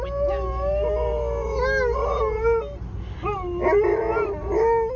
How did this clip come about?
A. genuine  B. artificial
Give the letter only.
A